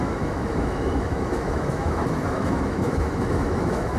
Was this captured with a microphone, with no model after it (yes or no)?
no